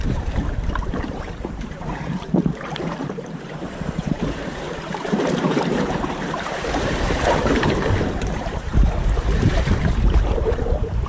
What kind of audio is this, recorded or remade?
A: remade